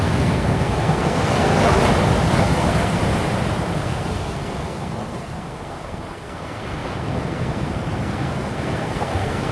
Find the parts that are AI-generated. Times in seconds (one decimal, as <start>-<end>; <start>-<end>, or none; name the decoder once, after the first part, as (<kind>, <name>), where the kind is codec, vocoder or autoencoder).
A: 0.0-1.8 (codec, SNAC); 2.3-3.0; 3.7-9.5